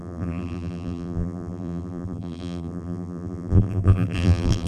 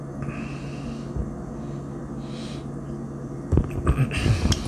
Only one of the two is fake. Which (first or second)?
first